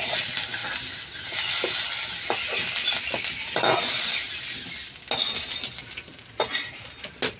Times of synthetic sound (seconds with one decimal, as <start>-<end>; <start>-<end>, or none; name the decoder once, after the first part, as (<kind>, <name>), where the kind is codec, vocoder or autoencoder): none